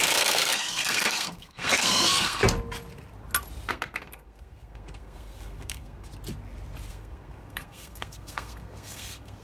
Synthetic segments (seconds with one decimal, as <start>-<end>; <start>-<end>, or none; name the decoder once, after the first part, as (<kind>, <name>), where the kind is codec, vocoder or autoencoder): 0.0-2.4 (codec, SNAC); 3.7-6.1; 6.9-9.4